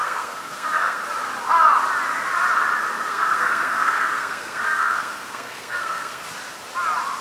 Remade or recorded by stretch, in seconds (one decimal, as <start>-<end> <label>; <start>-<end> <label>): 0.0-1.0 remade; 1.0-3.1 recorded; 3.1-6.2 remade; 6.2-7.2 recorded